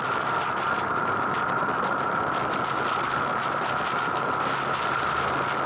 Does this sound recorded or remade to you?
recorded